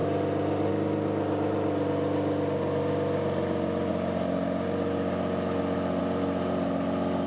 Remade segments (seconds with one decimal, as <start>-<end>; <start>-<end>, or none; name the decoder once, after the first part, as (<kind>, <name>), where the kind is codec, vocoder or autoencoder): none